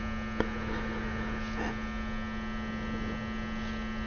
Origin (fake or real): real